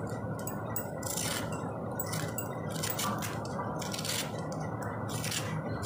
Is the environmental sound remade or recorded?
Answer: recorded